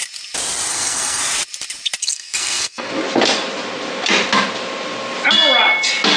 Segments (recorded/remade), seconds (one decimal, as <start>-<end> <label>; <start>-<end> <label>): 0.0-0.7 recorded; 0.7-1.2 remade; 1.2-2.0 recorded; 2.0-2.9 remade; 2.9-6.2 recorded